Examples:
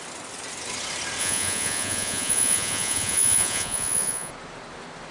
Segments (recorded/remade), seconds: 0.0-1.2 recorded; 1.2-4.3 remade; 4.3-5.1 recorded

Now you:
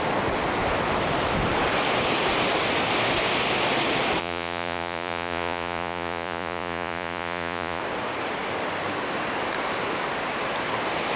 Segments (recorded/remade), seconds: 0.0-4.2 recorded; 4.2-7.8 remade; 7.8-11.2 recorded

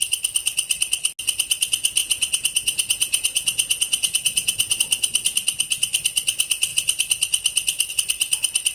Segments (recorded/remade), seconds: 0.0-2.0 recorded; 2.0-4.8 remade; 4.8-8.7 recorded